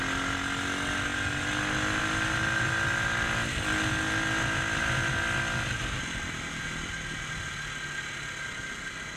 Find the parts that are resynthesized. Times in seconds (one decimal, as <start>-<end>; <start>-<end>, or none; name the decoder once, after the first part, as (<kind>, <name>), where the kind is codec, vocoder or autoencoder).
none